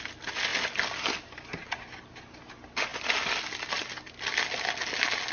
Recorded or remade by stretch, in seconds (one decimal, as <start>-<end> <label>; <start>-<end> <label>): 0.0-5.3 recorded